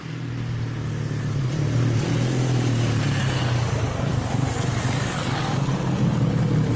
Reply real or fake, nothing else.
real